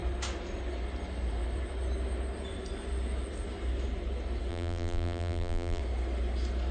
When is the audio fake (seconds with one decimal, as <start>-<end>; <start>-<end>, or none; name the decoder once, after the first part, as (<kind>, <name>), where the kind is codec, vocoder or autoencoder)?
4.5-5.8 (vocoder, BigVGAN v2)